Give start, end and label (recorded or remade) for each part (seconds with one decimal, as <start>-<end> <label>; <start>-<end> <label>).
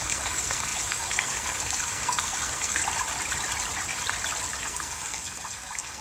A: 0.0-2.8 remade; 2.8-4.6 recorded; 4.6-6.0 remade